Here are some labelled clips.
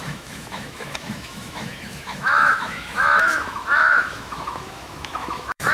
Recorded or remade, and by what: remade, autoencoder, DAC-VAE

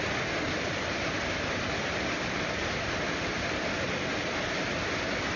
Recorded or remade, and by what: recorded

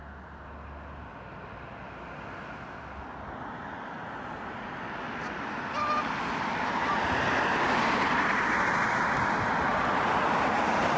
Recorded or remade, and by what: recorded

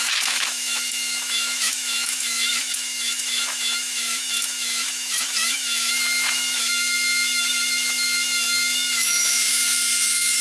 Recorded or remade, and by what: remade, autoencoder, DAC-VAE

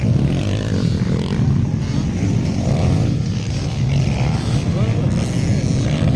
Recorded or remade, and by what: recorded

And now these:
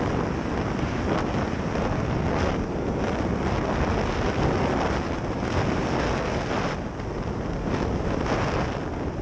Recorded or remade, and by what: recorded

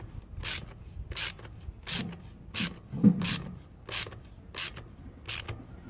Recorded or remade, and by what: recorded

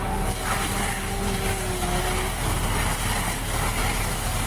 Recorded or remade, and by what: recorded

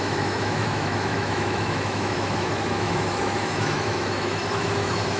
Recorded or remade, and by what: remade, autoencoder, DAC-VAE